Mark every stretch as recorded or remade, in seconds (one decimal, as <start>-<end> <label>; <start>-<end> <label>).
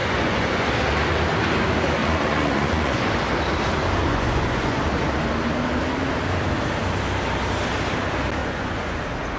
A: 0.0-0.7 remade; 0.7-2.0 recorded; 2.0-3.1 remade; 3.1-4.0 recorded; 4.0-4.8 remade; 4.8-8.4 recorded; 8.4-9.0 remade; 9.0-9.4 recorded